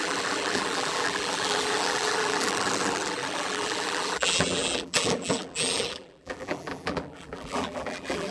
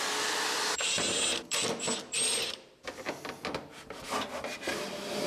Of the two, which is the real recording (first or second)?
second